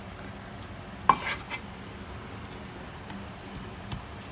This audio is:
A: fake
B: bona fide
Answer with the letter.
B